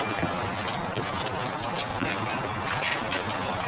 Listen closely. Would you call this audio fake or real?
real